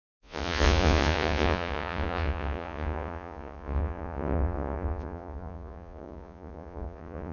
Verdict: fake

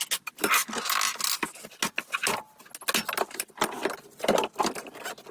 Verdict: real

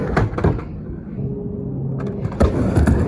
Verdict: real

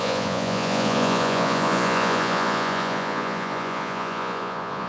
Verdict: fake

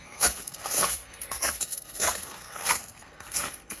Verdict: fake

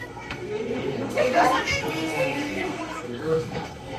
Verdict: fake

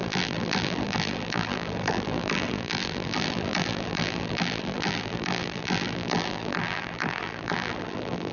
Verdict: fake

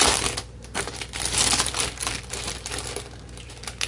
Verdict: real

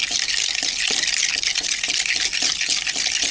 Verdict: real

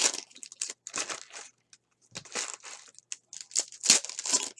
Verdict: real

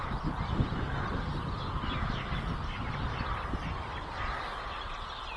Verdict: real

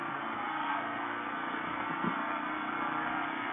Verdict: fake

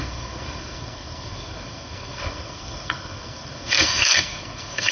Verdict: fake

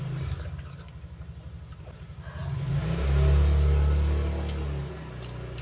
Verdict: real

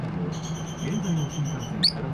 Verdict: real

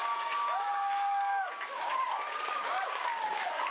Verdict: fake